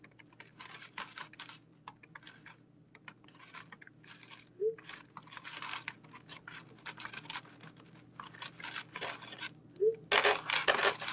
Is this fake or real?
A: real